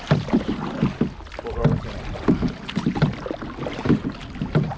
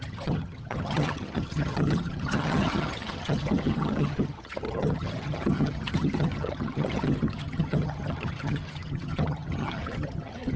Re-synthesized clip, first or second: second